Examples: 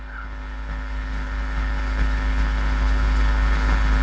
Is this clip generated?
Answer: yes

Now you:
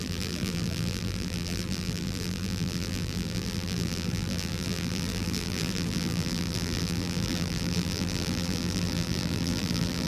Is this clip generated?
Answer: yes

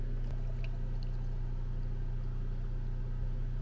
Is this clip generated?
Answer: no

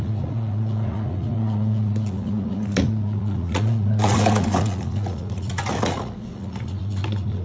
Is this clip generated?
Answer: yes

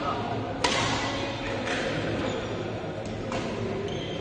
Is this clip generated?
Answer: no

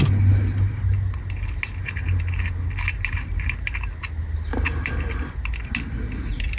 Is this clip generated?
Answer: no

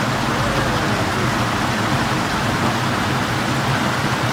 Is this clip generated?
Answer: no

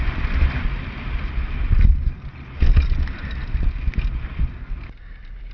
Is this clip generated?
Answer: no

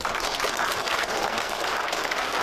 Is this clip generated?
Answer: yes